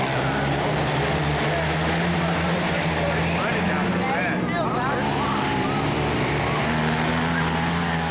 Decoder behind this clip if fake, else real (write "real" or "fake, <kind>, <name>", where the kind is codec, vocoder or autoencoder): real